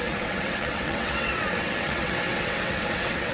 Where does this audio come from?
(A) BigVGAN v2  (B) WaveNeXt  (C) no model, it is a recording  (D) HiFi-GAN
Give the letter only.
B